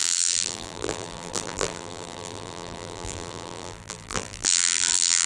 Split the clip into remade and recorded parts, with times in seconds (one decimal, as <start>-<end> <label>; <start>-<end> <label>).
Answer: 0.0-5.3 remade